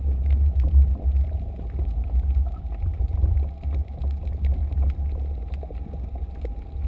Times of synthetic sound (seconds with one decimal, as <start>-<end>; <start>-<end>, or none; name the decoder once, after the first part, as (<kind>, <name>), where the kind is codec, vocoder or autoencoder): none